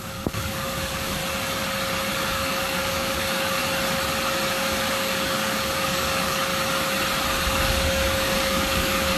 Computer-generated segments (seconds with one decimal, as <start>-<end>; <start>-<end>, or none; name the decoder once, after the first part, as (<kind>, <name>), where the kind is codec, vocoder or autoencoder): 0.0-1.2 (codec, DAC); 2.1-3.6; 4.5-6.5; 7.5-9.2